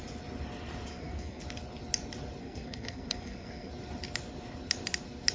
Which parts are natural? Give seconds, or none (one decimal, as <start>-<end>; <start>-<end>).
0.0-0.9; 1.4-2.4; 3.7-5.3